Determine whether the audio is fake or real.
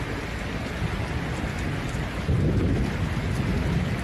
real